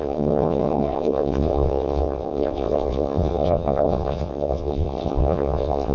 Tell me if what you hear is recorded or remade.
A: remade